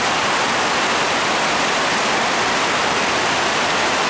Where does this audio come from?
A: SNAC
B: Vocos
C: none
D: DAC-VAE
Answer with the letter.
C